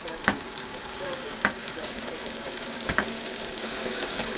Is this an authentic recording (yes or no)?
no